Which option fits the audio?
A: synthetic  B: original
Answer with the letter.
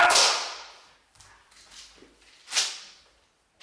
B